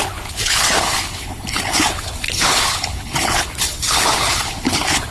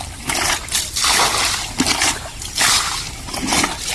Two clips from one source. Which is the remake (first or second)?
first